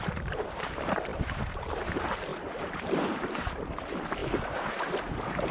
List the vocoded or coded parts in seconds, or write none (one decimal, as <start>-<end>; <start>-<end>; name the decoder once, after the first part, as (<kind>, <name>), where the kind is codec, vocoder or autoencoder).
0.0-2.3 (vocoder, BigVGAN v2); 2.8-5.5